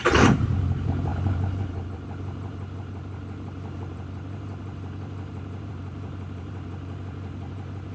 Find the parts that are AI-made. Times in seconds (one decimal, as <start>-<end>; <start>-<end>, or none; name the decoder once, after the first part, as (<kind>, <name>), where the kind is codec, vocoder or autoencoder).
0.0-7.9 (vocoder, BigVGAN v2)